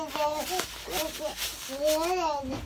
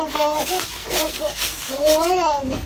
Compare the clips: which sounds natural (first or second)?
first